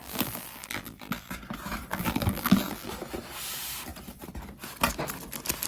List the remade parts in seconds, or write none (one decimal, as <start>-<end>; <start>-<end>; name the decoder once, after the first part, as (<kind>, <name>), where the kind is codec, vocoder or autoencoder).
0.0-1.3 (vocoder, BigVGAN v2); 1.9-2.9